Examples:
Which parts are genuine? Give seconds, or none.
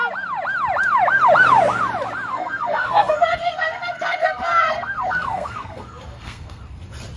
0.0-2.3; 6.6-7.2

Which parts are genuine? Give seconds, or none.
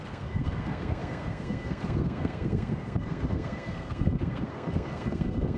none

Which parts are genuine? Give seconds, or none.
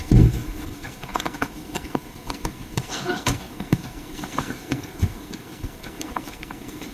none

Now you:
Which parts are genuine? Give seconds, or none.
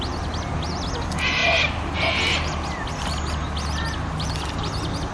0.0-5.1